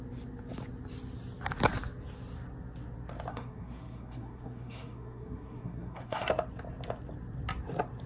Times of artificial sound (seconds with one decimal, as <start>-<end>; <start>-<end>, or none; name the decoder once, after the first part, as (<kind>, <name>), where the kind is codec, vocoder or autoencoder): 3.3-6.3 (codec, SNAC)